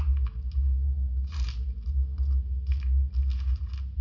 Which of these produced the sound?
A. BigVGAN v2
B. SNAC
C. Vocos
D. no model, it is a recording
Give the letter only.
D